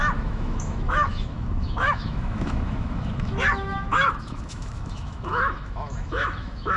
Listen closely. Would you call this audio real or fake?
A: fake